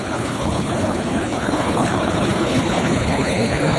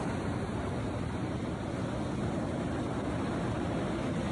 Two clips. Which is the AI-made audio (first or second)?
first